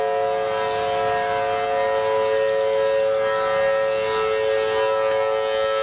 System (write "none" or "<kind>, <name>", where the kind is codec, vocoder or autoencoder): none